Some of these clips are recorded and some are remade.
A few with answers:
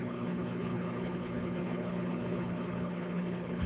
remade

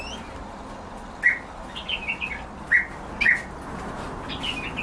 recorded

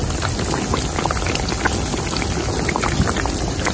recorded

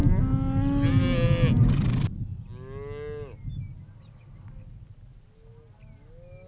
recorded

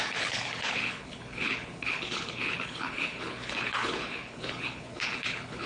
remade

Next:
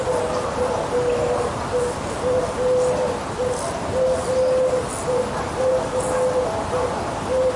recorded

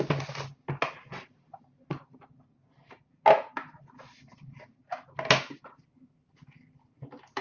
recorded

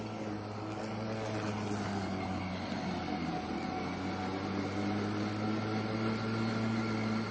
recorded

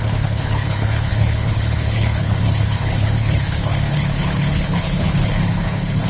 remade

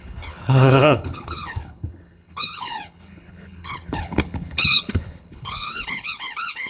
remade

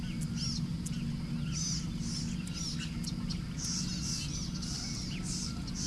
recorded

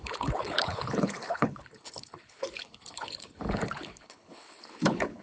remade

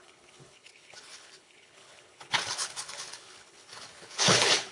remade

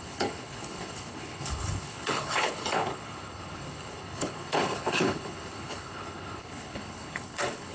remade